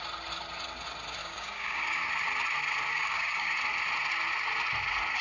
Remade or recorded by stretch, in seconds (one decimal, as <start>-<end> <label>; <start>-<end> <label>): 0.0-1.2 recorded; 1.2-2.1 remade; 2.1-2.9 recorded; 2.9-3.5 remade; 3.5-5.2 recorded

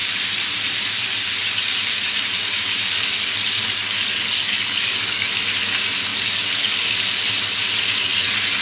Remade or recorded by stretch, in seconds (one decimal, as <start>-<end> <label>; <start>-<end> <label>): 0.0-2.9 recorded; 2.9-5.3 remade; 5.3-6.1 recorded; 6.1-6.8 remade; 6.8-8.6 recorded

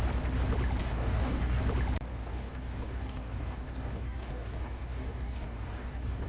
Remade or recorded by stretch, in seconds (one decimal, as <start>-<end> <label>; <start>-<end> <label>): 0.0-0.8 recorded; 0.8-1.6 remade; 1.6-2.1 recorded; 2.1-6.3 remade

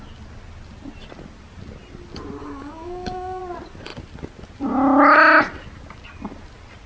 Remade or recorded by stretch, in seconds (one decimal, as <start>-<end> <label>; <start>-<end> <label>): 0.0-2.4 recorded; 2.4-3.4 remade; 3.4-6.9 recorded